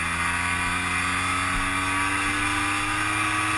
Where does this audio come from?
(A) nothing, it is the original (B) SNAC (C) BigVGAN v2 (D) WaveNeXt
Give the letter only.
A